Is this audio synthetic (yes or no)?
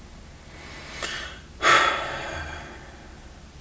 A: no